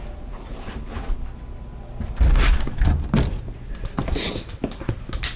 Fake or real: real